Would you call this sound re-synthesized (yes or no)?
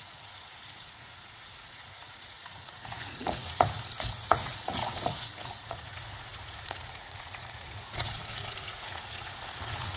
yes